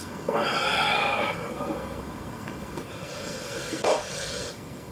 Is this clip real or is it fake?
fake